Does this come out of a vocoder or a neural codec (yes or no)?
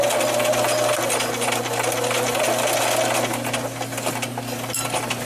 no